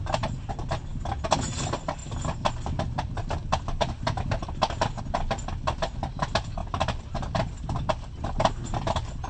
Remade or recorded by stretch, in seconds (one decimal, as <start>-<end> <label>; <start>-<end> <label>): 0.0-9.3 recorded